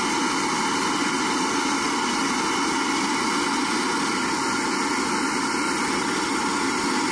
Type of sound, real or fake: real